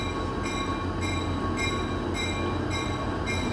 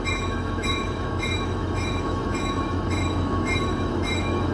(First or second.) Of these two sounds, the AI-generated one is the second